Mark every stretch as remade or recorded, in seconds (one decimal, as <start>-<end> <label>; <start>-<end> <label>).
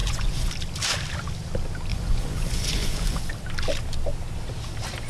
0.0-0.5 remade; 0.5-1.9 recorded; 1.9-3.2 remade; 3.2-5.1 recorded